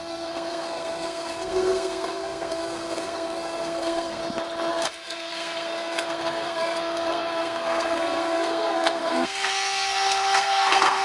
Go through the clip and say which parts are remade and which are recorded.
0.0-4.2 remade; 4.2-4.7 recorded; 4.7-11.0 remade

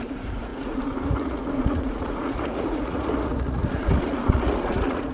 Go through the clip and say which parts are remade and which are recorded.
0.0-5.1 remade